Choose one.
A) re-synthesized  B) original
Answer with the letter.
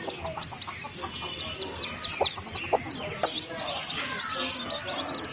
B